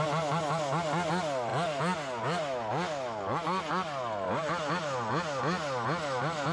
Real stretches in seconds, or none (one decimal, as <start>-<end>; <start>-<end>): 0.0-6.5